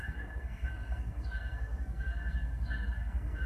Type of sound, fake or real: fake